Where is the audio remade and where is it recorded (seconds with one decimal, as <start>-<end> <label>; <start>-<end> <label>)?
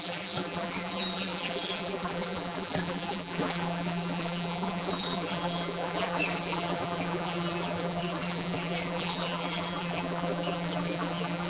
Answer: 0.0-11.5 remade